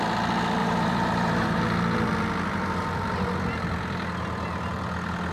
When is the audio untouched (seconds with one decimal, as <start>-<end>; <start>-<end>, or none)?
0.0-0.6; 1.6-5.3